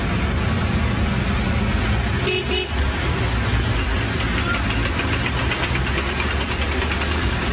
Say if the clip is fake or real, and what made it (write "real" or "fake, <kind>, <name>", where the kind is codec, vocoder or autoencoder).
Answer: real